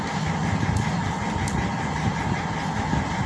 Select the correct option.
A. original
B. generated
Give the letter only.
A